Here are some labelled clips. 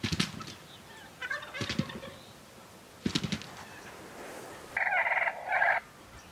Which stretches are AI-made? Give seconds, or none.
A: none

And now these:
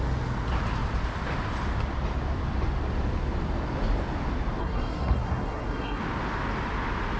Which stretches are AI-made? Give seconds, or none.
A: 4.6-6.0 (codec, SNAC)

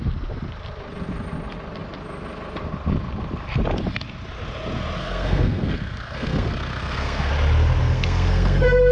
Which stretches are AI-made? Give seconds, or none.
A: 5.0-7.3 (codec, SNAC); 7.8-8.9

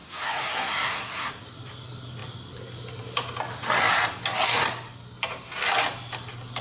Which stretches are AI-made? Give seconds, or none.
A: 0.0-1.3 (codec, SNAC)

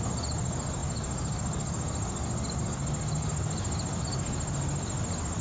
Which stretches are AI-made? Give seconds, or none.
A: none

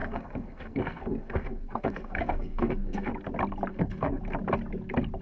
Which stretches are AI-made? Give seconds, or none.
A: 0.0-3.1 (codec, SNAC); 3.7-4.2

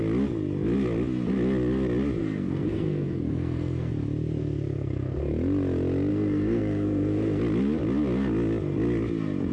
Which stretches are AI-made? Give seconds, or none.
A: 2.2-3.9 (codec, SNAC); 4.4-5.2; 6.1-7.4

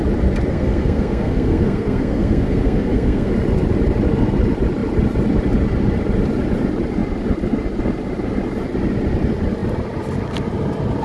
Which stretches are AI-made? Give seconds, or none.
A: 0.5-3.3 (codec, SNAC)